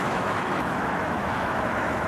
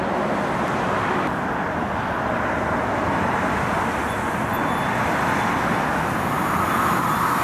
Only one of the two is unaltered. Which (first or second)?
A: second